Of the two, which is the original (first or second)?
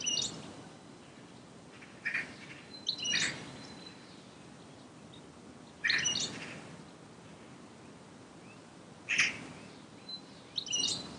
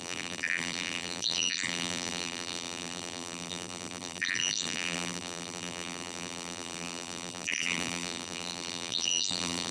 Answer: first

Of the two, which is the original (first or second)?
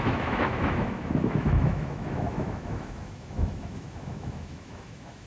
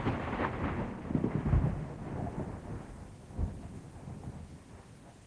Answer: second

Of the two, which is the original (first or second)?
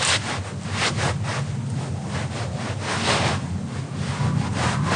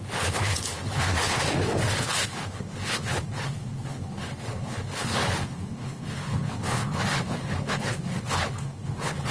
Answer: first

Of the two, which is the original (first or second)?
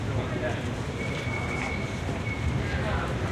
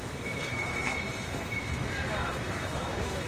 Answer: first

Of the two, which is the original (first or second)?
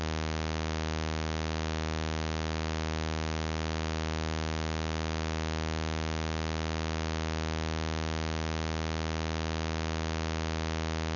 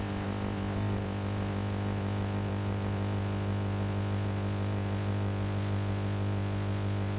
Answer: first